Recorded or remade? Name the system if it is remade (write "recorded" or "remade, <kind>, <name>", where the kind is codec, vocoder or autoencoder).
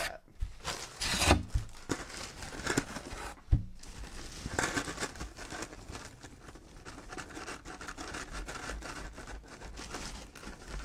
recorded